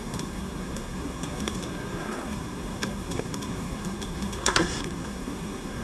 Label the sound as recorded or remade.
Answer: remade